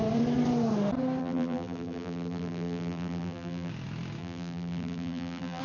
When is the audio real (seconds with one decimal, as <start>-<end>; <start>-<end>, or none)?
0.0-1.2; 3.7-4.2